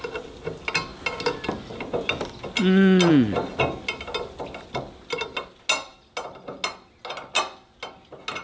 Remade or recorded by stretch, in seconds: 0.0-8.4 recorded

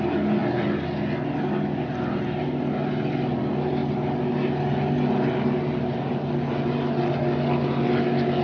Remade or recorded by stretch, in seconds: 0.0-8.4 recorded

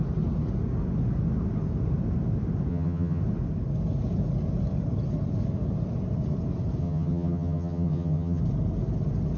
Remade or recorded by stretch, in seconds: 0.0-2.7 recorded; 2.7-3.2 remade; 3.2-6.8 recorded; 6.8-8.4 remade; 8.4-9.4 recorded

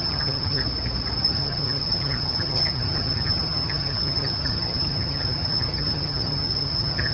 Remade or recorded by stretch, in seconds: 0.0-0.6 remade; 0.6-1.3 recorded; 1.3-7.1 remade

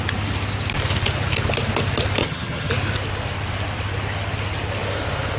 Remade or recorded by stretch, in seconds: 0.0-2.2 recorded; 2.2-2.7 remade; 2.7-5.4 recorded